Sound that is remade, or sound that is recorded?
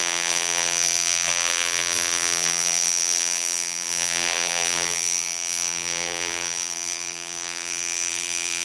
remade